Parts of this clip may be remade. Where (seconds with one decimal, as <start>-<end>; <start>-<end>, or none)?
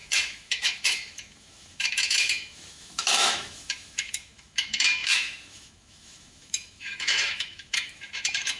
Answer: 0.0-8.6